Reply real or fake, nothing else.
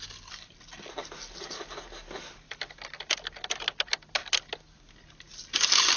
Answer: real